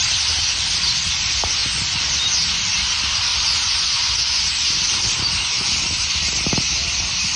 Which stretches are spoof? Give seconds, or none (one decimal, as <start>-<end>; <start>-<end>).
1.6-2.2; 3.3-4.4